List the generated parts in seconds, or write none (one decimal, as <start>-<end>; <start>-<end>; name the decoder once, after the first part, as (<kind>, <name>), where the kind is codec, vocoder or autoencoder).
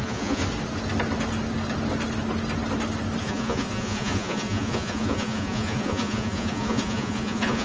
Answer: 0.0-0.4 (vocoder, Vocos); 3.2-7.6